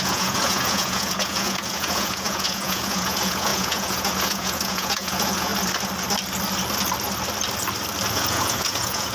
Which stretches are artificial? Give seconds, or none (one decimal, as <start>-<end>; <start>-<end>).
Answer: 0.0-5.5; 8.1-9.1